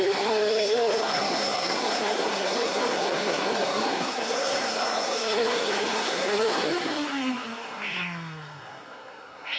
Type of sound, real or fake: fake